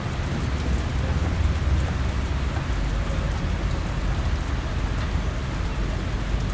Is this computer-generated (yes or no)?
no